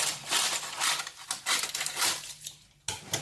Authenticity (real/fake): real